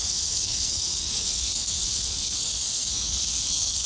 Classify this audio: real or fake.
fake